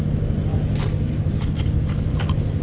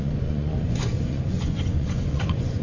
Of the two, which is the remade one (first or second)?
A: second